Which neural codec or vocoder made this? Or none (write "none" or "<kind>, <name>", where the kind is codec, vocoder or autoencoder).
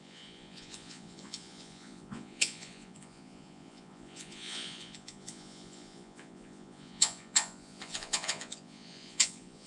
vocoder, Vocos